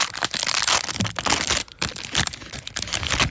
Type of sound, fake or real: real